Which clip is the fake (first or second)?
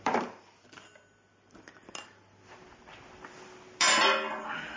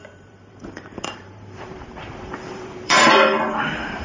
second